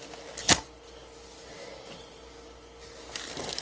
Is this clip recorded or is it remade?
recorded